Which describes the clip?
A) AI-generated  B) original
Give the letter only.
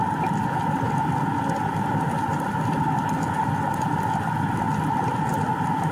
B